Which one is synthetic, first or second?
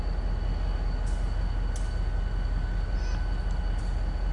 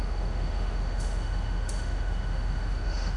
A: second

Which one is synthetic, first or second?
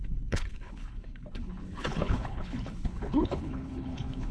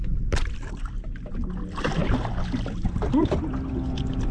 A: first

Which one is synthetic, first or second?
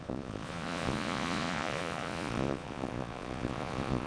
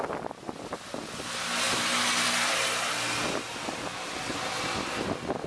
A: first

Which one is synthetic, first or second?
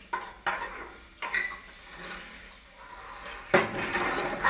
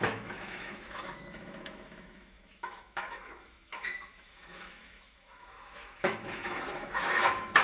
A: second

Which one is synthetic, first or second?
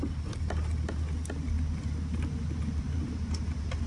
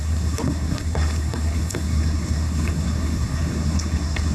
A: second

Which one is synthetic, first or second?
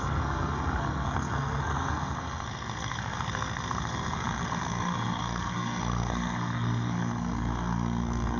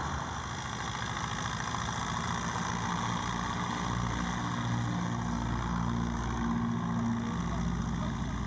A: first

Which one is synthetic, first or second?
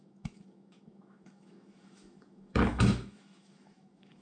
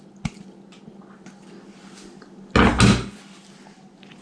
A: first